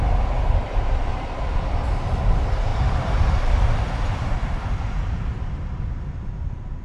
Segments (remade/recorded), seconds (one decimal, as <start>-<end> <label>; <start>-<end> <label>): 0.0-2.7 recorded; 2.7-5.9 remade; 5.9-6.8 recorded